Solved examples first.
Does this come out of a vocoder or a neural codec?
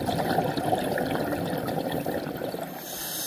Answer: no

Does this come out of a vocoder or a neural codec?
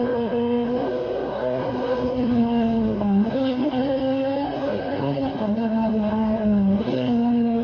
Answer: yes